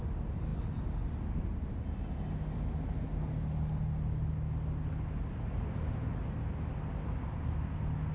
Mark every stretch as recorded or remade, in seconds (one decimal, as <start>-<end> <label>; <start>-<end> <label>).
0.0-8.1 recorded